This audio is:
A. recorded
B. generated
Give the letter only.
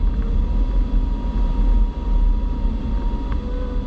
A